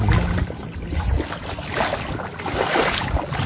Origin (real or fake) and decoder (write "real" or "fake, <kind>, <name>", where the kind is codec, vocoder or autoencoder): real